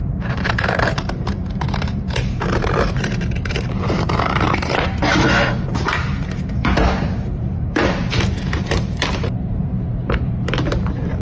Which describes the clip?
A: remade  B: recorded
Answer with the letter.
A